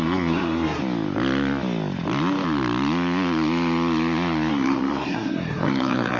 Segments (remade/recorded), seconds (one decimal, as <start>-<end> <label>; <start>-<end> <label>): 0.0-0.8 remade; 0.8-4.5 recorded; 4.5-6.2 remade

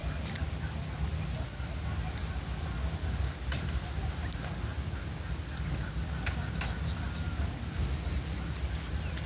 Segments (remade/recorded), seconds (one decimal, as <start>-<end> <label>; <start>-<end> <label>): 0.0-9.3 recorded

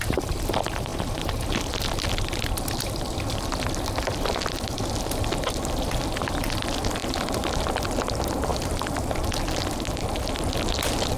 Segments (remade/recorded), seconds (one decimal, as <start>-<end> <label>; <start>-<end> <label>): 0.0-11.2 recorded